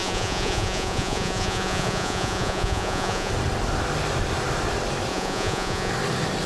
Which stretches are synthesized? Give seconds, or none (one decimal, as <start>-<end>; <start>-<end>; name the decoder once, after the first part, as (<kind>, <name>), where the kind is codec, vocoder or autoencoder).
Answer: 0.0-3.3 (vocoder, Vocos); 5.1-5.9